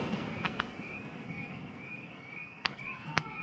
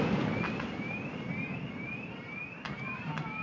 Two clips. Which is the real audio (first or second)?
second